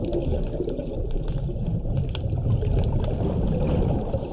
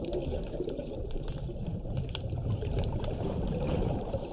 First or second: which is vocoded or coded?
second